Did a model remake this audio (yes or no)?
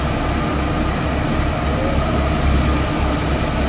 no